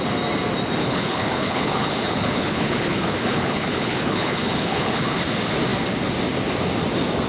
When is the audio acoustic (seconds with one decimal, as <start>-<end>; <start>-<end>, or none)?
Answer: 0.0-0.8; 5.2-7.3